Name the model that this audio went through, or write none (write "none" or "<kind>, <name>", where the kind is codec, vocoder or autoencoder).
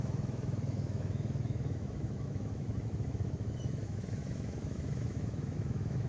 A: autoencoder, DAC-VAE